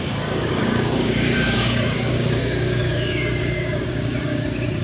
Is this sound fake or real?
fake